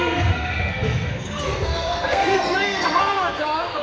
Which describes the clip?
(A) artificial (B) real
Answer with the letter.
A